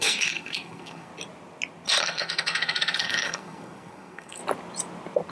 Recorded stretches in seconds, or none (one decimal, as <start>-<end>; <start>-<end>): 1.1-2.0; 4.4-5.3